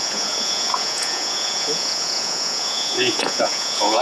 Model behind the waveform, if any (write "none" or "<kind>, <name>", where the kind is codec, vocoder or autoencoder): vocoder, Vocos